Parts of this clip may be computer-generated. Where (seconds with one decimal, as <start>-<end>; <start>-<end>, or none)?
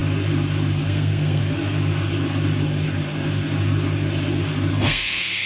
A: 0.8-1.4; 4.7-5.5